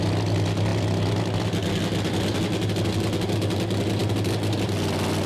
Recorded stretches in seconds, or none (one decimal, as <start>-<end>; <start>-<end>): 0.0-5.3